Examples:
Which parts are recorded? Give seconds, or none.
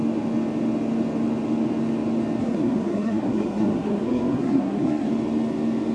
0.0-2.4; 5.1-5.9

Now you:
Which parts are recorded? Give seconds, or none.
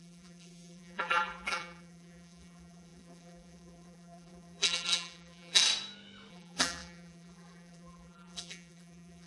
5.6-6.3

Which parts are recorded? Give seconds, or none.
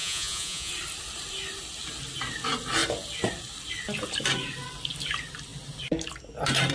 0.7-6.7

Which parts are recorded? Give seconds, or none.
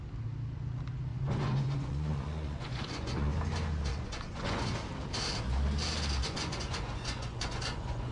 0.0-1.1; 3.3-3.9; 4.7-6.2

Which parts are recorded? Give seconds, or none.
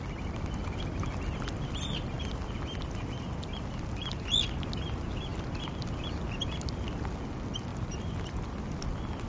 0.0-9.3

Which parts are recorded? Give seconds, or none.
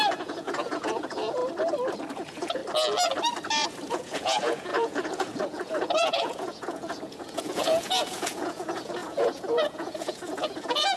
1.4-2.1; 2.6-3.9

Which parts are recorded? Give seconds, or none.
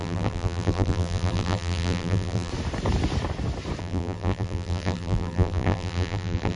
2.5-3.8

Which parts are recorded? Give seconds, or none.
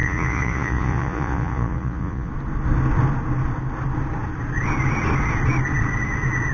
2.3-6.5